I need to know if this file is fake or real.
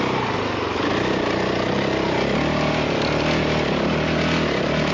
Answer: real